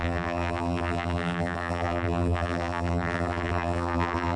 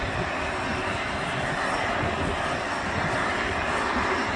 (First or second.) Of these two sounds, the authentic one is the second